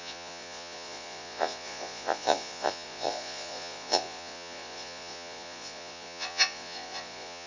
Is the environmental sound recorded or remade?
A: remade